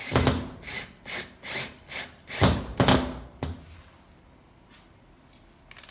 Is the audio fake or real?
real